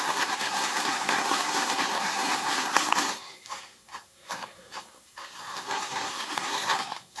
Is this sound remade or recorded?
remade